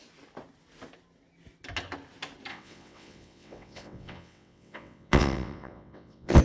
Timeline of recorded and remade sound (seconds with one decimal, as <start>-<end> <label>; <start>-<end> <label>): 0.0-2.5 recorded; 2.5-6.4 remade